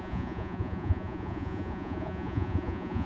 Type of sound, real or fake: fake